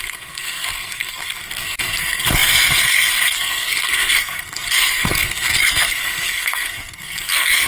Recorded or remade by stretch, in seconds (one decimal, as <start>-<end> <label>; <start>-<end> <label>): 0.0-7.7 remade